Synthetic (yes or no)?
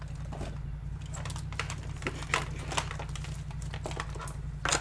no